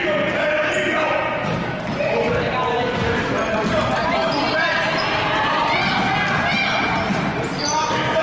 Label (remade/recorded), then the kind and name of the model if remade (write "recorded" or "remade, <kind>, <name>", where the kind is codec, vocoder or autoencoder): recorded